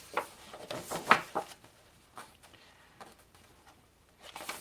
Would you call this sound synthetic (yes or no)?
yes